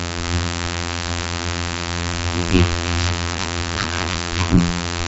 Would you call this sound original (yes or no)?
no